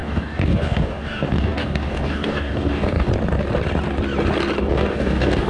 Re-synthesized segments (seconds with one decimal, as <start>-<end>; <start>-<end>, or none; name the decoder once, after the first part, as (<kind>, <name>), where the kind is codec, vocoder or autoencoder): 0.0-3.1 (codec, DAC); 4.6-5.5